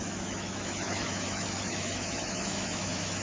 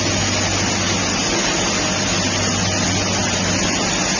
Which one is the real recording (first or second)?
second